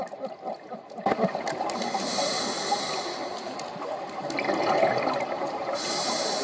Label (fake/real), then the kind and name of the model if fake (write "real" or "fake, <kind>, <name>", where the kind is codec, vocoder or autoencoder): real